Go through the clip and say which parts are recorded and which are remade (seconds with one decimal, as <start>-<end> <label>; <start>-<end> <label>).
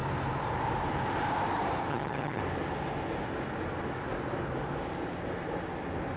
0.0-1.9 recorded; 1.9-2.4 remade; 2.4-6.2 recorded